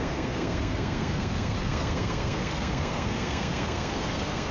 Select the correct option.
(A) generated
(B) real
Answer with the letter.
A